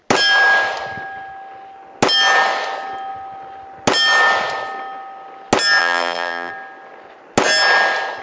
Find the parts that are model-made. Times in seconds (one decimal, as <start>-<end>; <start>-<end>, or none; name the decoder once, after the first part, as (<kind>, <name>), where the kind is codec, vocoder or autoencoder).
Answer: 5.8-6.5 (vocoder, BigVGAN v2)